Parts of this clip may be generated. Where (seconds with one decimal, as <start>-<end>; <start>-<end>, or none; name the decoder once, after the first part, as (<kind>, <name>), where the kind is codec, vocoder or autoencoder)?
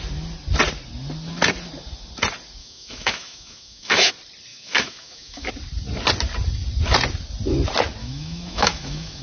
2.6-4.1 (autoencoder, DAC-VAE); 4.5-5.5; 8.0-9.2